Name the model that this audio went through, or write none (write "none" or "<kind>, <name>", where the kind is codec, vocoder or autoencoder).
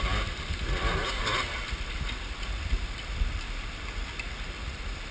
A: none